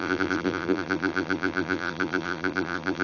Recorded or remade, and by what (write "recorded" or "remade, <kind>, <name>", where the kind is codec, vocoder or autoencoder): remade, vocoder, BigVGAN v2